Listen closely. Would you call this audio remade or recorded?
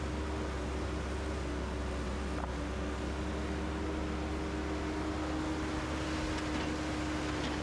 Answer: recorded